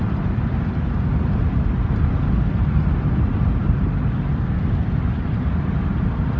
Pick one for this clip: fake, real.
real